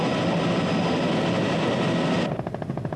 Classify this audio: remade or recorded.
recorded